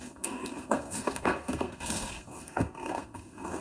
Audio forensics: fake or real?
fake